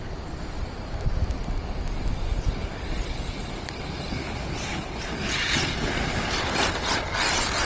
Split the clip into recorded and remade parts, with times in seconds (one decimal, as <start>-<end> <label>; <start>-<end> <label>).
0.0-4.2 recorded; 4.2-5.1 remade; 5.1-7.6 recorded